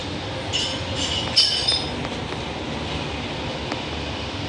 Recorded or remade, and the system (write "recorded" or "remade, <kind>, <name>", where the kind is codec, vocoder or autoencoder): recorded